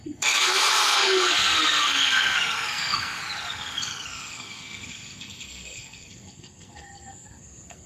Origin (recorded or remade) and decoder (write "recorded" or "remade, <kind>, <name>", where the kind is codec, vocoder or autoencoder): remade, codec, SNAC